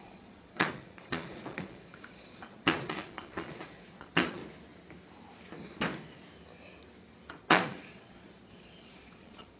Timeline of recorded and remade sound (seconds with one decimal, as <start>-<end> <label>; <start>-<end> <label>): 0.0-4.4 remade; 4.4-7.4 recorded; 7.4-9.6 remade